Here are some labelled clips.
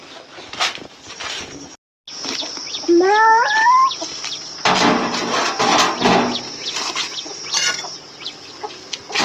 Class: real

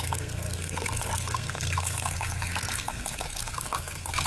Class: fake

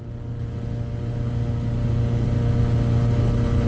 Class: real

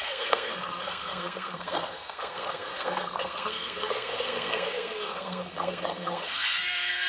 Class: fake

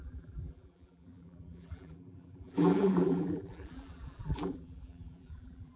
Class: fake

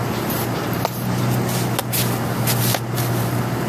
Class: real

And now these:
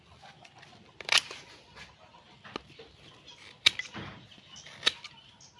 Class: real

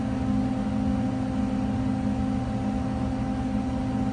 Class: real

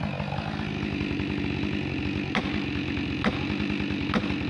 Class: real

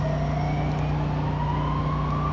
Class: real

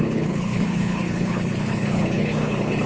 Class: fake